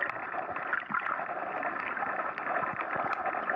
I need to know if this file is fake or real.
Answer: real